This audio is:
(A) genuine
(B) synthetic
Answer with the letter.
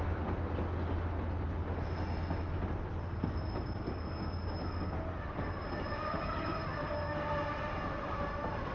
A